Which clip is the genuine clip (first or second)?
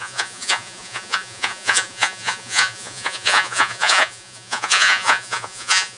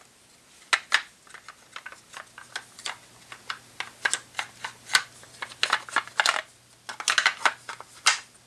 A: second